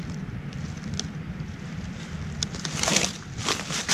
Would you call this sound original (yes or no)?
yes